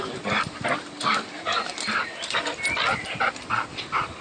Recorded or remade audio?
recorded